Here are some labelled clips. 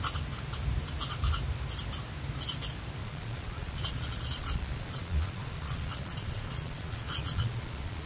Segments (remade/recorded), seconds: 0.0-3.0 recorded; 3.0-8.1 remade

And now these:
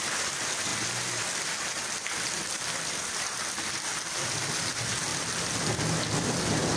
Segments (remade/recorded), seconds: 0.0-6.8 recorded

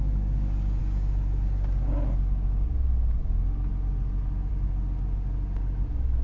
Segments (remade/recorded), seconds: 0.0-6.2 recorded

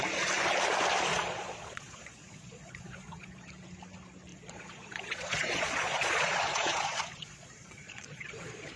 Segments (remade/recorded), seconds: 0.0-1.1 recorded; 1.1-3.5 remade; 3.5-4.3 recorded; 4.3-8.8 remade

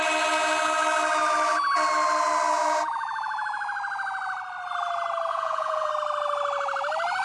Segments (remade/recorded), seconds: 0.0-5.3 recorded; 5.3-5.9 remade; 5.9-7.2 recorded

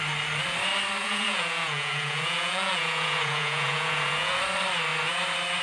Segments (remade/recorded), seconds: 0.0-1.0 recorded; 1.0-4.4 remade; 4.4-5.6 recorded

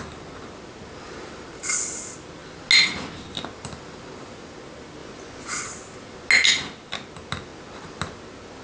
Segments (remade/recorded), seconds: 0.0-5.0 recorded; 5.0-5.6 remade; 5.6-8.6 recorded